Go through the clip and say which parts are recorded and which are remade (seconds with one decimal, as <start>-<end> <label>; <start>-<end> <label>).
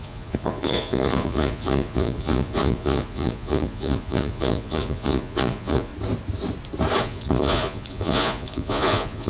0.0-5.9 remade; 5.9-7.0 recorded; 7.0-9.3 remade